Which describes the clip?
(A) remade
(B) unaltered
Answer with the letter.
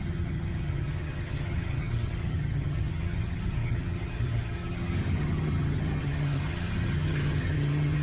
A